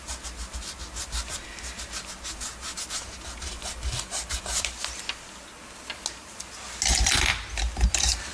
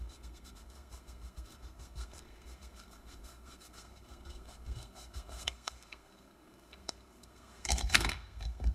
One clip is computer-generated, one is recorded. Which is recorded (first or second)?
first